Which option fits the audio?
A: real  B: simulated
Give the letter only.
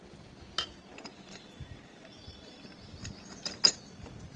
A